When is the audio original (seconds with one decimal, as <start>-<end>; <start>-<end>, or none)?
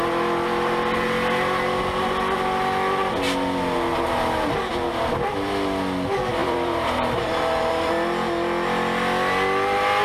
0.0-6.4; 7.7-10.0